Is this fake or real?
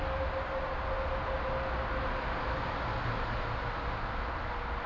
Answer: real